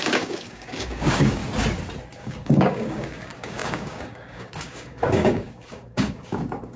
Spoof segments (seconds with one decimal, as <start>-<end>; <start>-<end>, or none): 0.0-1.4; 2.2-6.8